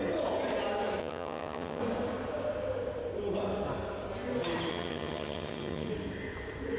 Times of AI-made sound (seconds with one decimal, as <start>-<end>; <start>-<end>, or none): 1.0-1.8; 4.7-5.9